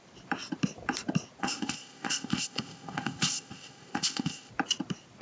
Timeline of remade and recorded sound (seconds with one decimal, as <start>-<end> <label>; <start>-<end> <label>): 0.0-1.4 recorded; 1.4-4.5 remade; 4.5-5.2 recorded